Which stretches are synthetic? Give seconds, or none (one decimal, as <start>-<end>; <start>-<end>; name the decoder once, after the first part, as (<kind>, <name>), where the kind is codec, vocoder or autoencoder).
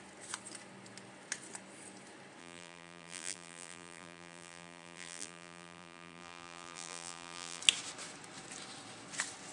2.4-7.6 (vocoder, BigVGAN v2)